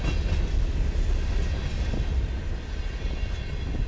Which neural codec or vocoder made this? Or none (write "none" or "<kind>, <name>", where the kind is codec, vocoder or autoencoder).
none